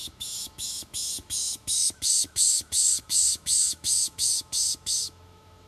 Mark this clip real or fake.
fake